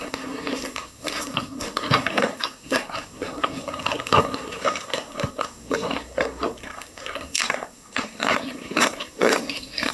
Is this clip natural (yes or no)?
no